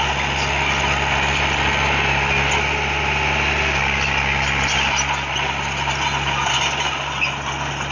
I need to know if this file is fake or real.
real